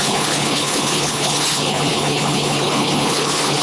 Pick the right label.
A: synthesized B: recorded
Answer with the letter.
A